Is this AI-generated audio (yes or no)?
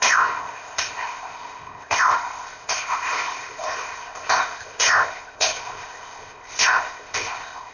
yes